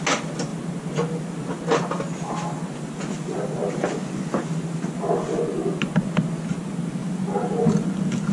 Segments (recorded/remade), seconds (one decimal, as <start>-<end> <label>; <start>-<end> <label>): 0.0-8.3 recorded